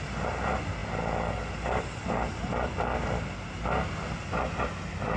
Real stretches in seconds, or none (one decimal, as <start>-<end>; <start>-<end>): 0.0-5.2